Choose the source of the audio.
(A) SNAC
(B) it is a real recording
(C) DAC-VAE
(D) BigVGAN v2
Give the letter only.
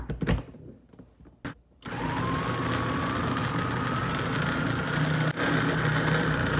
B